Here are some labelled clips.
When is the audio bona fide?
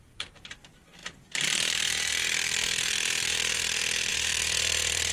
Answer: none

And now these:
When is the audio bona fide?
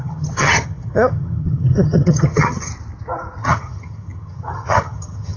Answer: 2.7-3.4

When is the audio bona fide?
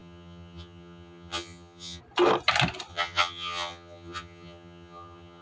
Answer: 2.0-2.9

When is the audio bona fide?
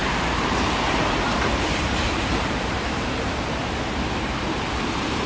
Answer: none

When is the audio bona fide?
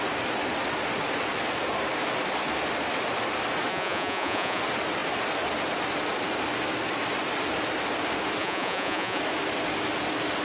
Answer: 0.0-3.7; 4.6-8.4; 9.2-10.4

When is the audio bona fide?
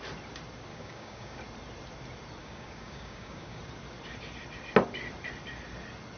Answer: 0.0-0.7; 1.4-2.4; 3.6-6.2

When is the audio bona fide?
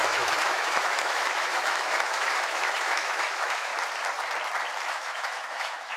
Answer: 3.7-4.8